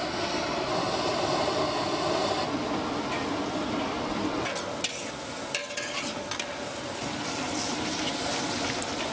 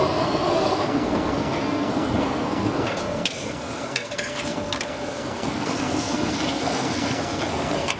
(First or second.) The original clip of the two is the first